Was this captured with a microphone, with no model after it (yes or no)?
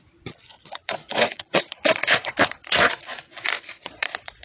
no